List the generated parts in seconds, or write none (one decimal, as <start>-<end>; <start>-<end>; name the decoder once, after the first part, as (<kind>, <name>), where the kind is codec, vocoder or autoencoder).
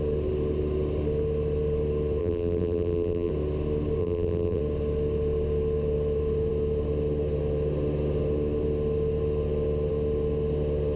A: 2.2-3.3 (vocoder, BigVGAN v2); 4.0-4.6